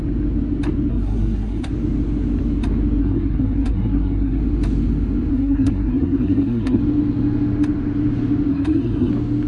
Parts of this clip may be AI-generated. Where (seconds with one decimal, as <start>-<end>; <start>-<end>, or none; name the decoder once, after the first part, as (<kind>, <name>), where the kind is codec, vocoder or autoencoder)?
0.9-1.7 (codec, SNAC); 3.0-4.4; 5.3-6.8; 8.5-9.1